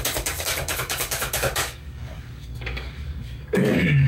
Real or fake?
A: fake